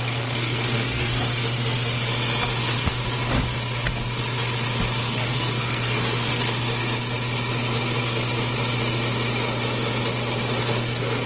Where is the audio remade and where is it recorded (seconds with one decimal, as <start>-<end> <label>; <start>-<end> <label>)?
0.0-1.1 remade; 1.1-2.6 recorded; 2.6-3.0 remade; 3.0-5.0 recorded; 5.0-6.4 remade; 6.4-10.6 recorded; 10.6-11.3 remade